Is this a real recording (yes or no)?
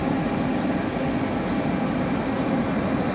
yes